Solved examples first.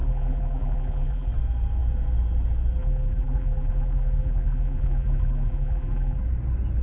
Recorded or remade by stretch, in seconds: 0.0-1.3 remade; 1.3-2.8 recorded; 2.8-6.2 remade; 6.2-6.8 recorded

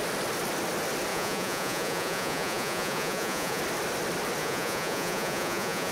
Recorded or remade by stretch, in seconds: 0.0-1.1 recorded; 1.1-3.6 remade; 3.6-4.4 recorded; 4.4-5.9 remade

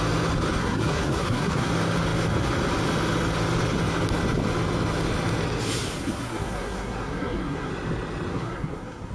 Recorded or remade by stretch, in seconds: 0.0-0.6 recorded; 0.6-1.7 remade; 1.7-6.0 recorded; 6.0-7.7 remade; 7.7-8.3 recorded; 8.3-9.1 remade

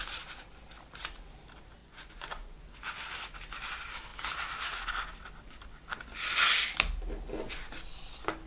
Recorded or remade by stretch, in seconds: 0.0-1.8 recorded; 1.8-2.6 remade; 2.6-8.5 recorded

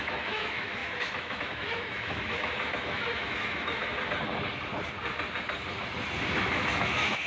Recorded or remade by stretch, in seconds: 0.0-3.8 remade; 3.8-6.3 recorded; 6.3-7.3 remade